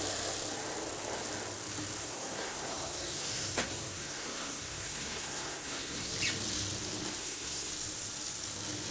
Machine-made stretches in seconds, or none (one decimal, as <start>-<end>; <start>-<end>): 2.0-6.1; 7.2-7.7